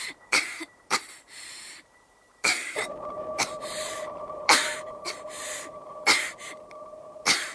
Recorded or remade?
remade